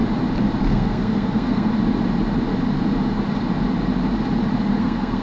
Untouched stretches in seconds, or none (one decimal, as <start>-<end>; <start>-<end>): 0.0-0.6; 1.7-4.8